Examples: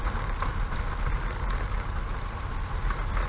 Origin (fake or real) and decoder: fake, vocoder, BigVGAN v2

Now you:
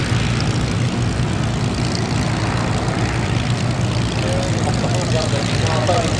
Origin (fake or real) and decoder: real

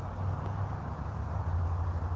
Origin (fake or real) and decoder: real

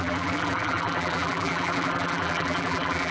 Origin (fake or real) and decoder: fake, vocoder, BigVGAN v2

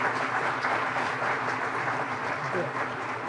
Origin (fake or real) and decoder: fake, vocoder, BigVGAN v2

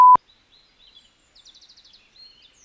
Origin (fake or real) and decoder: real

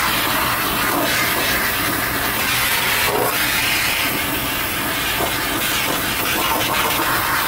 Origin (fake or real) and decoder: real